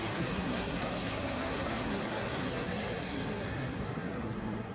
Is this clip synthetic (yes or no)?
yes